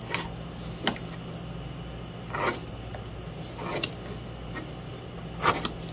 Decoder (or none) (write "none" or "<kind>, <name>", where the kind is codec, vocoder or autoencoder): none